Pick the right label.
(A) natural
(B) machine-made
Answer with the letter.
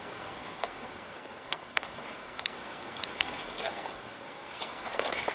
B